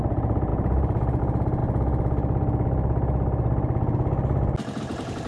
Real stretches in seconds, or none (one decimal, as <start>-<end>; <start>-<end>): 1.6-4.8